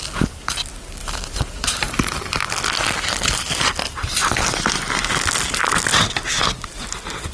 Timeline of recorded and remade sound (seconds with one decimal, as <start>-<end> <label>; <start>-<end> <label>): 0.0-1.0 recorded; 1.0-2.4 remade; 2.4-7.3 recorded